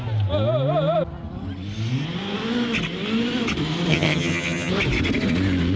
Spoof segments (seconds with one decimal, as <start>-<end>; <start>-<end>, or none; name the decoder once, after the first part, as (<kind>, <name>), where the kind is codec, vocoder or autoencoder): 3.9-4.7 (vocoder, HiFi-GAN)